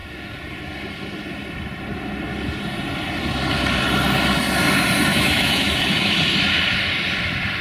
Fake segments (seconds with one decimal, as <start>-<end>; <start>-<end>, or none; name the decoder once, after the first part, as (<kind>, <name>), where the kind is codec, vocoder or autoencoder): 5.1-6.2 (autoencoder, DAC-VAE)